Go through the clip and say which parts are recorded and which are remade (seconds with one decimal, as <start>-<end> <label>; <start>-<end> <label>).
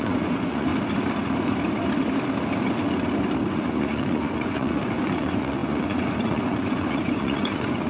0.0-0.7 remade; 0.7-3.5 recorded; 3.5-7.9 remade